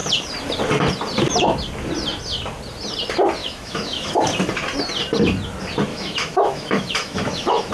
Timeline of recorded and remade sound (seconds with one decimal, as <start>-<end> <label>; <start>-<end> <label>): 0.0-3.4 recorded; 3.4-4.1 remade; 4.1-5.9 recorded; 5.9-7.7 remade